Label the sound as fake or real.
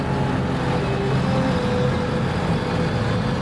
real